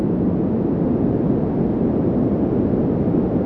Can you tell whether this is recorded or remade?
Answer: recorded